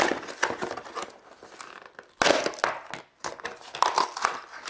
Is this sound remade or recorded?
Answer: recorded